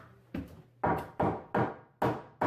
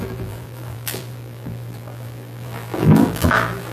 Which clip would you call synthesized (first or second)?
second